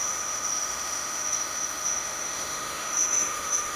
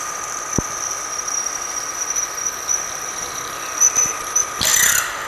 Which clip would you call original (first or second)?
second